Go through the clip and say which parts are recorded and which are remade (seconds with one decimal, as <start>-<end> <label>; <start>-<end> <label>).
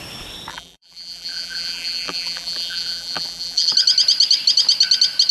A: 0.0-0.5 recorded; 0.5-3.7 remade; 3.7-5.3 recorded